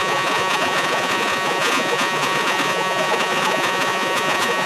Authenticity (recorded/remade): remade